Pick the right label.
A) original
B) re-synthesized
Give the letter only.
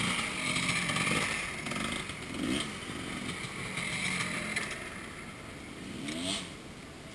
A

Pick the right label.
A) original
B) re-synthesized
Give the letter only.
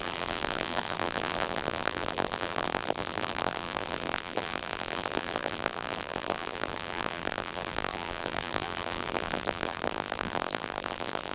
B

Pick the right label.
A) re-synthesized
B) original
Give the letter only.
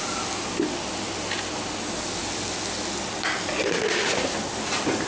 B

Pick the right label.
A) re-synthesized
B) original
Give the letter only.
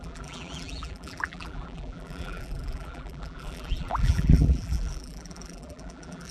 A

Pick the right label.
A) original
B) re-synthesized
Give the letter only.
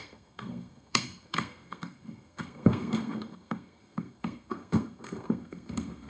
B